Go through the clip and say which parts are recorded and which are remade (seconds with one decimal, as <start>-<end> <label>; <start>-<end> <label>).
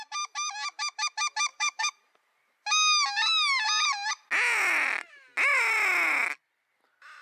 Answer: 0.0-1.5 recorded; 1.5-2.0 remade; 2.0-7.2 recorded